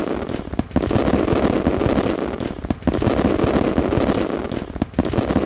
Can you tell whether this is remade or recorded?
recorded